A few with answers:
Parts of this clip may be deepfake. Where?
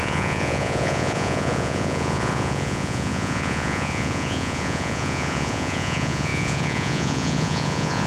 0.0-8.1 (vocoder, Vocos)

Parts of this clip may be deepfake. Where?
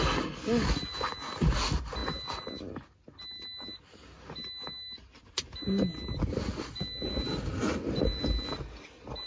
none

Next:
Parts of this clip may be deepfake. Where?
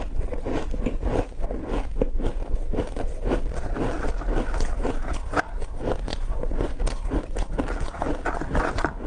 6.1-6.8 (vocoder, Vocos)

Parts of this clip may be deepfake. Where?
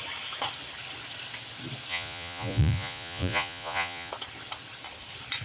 1.9-4.1 (vocoder, Vocos)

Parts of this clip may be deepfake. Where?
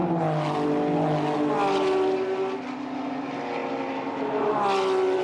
none